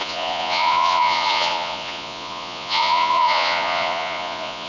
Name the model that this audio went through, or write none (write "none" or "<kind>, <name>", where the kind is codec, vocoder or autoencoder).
vocoder, Vocos